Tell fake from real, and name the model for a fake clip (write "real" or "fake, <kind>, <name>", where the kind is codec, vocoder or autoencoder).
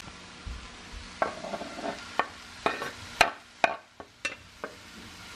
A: real